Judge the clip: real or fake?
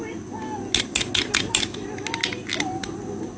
real